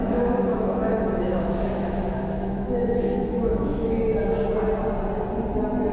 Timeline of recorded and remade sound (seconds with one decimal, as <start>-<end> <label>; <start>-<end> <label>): 0.0-0.5 recorded; 0.5-4.0 remade; 4.0-5.9 recorded